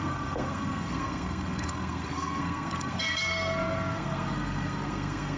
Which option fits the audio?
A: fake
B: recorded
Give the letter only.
A